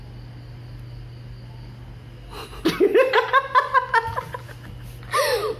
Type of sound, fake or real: real